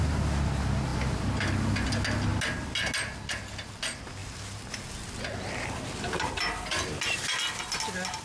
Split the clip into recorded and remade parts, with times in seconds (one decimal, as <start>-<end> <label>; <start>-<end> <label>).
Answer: 0.0-8.2 recorded